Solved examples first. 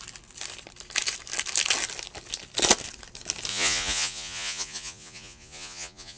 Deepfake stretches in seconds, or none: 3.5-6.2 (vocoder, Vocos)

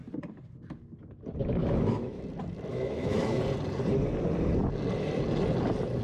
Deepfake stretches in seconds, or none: 1.6-2.2 (autoencoder, DAC-VAE); 2.7-3.4

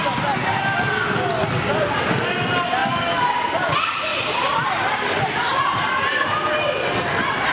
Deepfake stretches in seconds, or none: 4.1-5.6 (vocoder, BigVGAN v2)